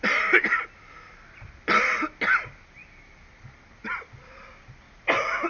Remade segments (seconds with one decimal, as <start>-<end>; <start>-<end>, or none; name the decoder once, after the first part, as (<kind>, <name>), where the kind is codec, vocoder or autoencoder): none